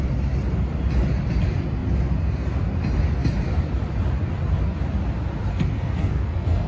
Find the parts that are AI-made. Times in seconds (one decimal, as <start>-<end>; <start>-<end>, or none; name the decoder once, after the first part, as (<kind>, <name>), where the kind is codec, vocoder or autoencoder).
5.5-6.7 (codec, SNAC)